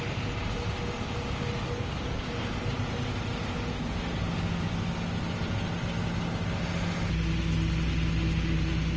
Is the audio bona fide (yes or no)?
yes